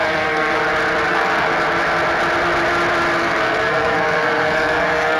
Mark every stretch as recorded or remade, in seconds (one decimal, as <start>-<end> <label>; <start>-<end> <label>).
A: 0.0-0.6 remade; 0.6-1.1 recorded; 1.1-1.5 remade; 1.5-3.2 recorded; 3.2-5.2 remade